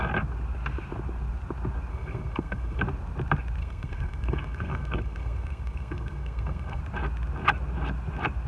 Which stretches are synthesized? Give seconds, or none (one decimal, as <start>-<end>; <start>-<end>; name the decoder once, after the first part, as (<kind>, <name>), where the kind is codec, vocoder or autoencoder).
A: 1.9-2.8 (codec, SNAC); 3.6-6.8